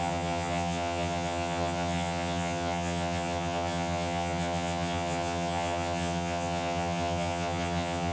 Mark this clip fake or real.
fake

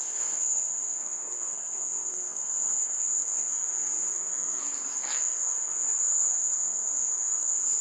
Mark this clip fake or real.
fake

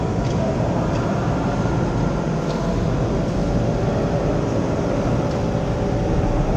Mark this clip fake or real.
real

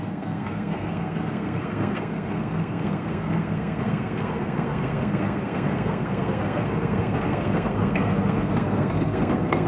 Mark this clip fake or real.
fake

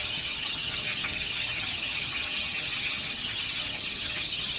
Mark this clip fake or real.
fake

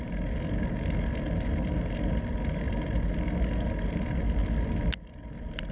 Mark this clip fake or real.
real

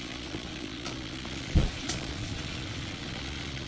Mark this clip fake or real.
fake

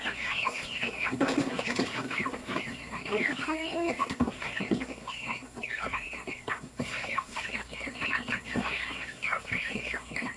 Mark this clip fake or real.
fake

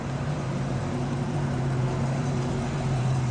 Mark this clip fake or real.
fake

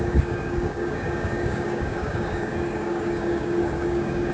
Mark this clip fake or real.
fake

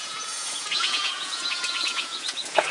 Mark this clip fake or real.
fake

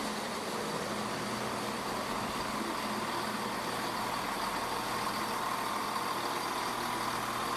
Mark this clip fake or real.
real